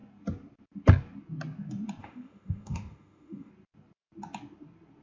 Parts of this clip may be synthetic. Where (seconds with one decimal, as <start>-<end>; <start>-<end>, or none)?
2.0-3.5